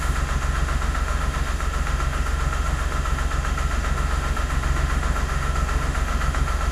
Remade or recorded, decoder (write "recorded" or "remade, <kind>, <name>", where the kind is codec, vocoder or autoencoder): remade, autoencoder, DAC-VAE